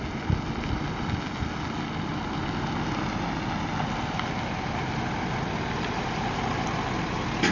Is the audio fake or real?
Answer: real